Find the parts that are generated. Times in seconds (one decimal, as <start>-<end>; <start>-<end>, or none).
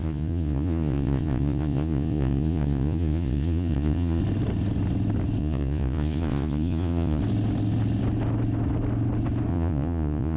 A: 0.0-4.2; 5.4-7.2; 9.5-10.4